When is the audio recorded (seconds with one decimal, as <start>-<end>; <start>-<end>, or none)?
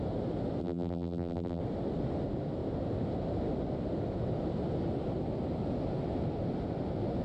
0.0-0.6; 1.6-7.2